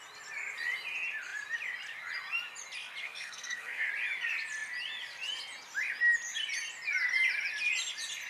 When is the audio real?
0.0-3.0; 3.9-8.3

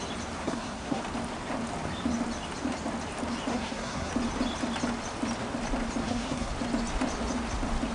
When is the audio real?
0.0-0.4; 1.0-3.5; 4.1-6.0; 6.5-7.9